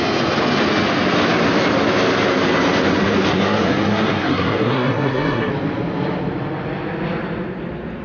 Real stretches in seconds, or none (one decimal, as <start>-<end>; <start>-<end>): 0.0-3.3; 5.5-8.0